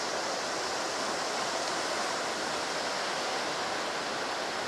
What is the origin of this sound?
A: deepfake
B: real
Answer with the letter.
B